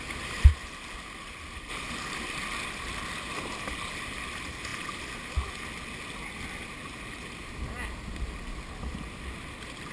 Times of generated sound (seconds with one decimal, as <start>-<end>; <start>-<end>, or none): none

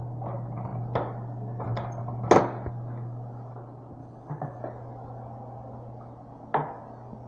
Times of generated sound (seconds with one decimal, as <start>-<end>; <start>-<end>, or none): 4.0-4.6

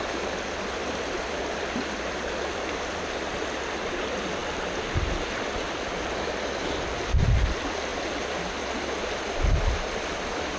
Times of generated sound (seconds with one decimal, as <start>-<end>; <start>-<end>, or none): none